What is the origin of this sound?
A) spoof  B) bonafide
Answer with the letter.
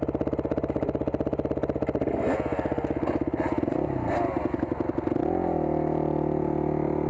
B